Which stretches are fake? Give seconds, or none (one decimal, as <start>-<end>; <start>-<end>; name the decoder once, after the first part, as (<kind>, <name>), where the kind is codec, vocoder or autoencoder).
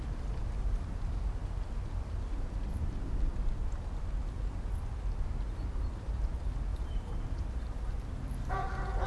2.7-3.3 (vocoder, BigVGAN v2); 6.7-8.5